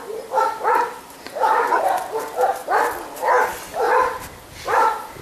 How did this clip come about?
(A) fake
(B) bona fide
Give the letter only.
B